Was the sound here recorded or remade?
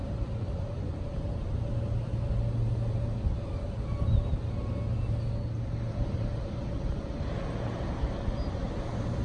recorded